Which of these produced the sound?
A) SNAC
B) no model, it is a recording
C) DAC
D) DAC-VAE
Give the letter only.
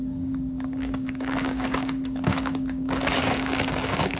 C